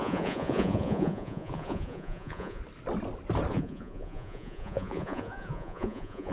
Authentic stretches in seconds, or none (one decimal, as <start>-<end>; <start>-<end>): 2.6-3.5